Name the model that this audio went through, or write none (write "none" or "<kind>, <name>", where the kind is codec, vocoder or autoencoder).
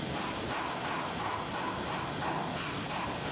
none